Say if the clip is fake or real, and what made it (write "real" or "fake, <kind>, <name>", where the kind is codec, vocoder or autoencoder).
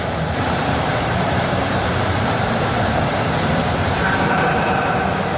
fake, vocoder, BigVGAN v2